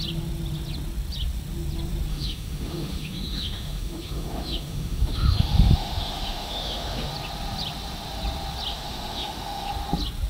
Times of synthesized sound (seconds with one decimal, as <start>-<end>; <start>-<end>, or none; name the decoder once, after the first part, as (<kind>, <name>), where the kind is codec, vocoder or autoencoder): 2.1-7.1 (autoencoder, DAC-VAE); 8.7-9.7